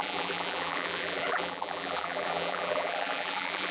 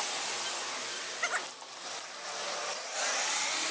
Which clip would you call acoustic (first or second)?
second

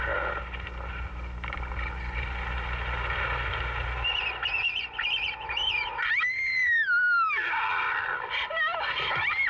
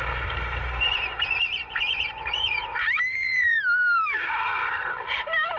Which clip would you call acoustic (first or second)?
first